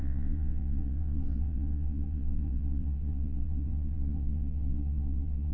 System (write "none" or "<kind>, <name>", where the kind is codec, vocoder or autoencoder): vocoder, WaveNeXt